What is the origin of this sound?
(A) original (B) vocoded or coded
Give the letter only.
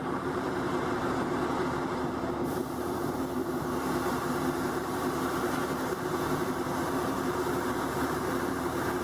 B